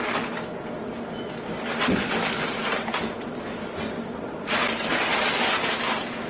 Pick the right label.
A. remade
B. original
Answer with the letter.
B